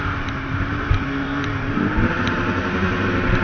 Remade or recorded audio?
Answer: remade